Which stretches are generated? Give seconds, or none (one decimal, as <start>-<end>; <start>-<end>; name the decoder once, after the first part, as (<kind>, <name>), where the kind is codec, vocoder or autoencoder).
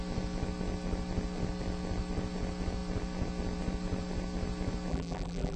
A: 4.9-5.6 (vocoder, BigVGAN v2)